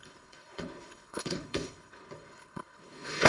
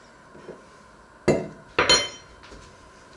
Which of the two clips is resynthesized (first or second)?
first